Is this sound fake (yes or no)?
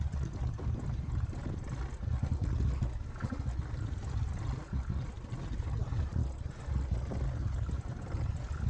no